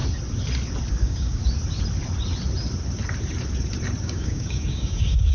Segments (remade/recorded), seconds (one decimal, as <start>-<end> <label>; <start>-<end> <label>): 0.0-0.9 recorded; 0.9-1.4 remade; 1.4-4.0 recorded; 4.0-5.3 remade